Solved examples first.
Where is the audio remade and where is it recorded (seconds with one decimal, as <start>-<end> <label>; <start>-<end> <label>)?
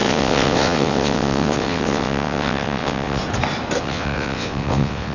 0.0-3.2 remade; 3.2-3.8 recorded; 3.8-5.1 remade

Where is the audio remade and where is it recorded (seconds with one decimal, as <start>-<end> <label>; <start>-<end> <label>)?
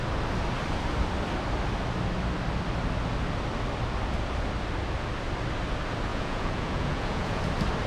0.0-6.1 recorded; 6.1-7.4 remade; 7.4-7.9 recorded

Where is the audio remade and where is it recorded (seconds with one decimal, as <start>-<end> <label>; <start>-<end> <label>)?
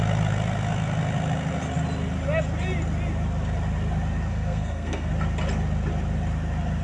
0.0-4.3 recorded; 4.3-5.1 remade; 5.1-6.8 recorded